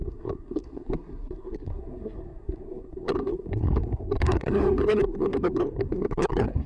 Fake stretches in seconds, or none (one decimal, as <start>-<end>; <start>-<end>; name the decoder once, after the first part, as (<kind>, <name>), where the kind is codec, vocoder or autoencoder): 0.0-6.7 (codec, SNAC)